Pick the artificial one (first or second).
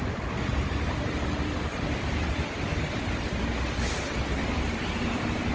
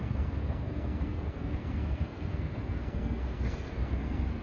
second